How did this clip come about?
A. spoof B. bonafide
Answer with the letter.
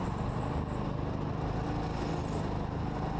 B